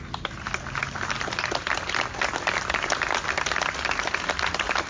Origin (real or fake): real